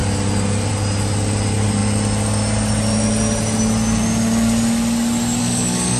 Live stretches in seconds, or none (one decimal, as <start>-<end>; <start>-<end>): 0.0-5.4